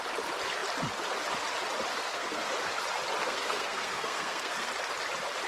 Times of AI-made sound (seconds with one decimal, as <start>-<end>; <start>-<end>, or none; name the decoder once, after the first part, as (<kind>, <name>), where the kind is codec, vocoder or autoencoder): 1.9-2.5 (codec, SNAC); 3.2-4.7